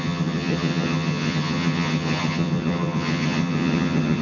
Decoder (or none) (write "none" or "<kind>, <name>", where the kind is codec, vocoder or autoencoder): vocoder, HiFi-GAN